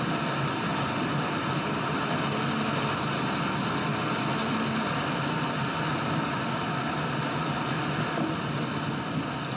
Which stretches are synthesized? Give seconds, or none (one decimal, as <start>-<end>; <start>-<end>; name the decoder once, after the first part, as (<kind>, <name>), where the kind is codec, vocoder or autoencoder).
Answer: none